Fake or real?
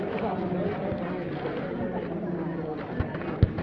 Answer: real